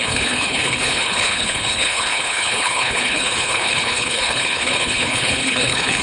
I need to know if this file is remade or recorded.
remade